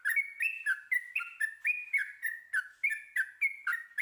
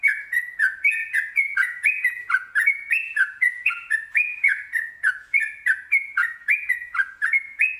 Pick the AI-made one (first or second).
second